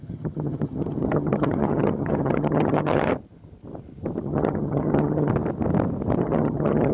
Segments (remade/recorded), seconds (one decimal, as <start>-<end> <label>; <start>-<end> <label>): 0.0-3.1 remade; 3.1-4.2 recorded; 4.2-5.3 remade; 5.3-6.2 recorded; 6.2-6.9 remade